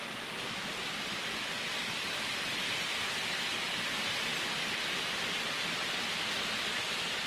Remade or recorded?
recorded